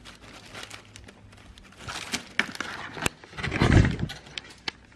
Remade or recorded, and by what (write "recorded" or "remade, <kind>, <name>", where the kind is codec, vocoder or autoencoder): recorded